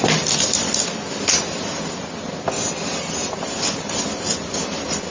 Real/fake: real